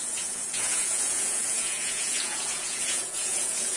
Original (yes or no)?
no